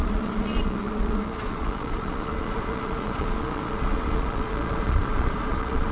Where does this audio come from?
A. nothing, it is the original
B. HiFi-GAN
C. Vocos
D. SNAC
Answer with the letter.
C